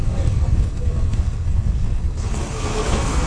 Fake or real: fake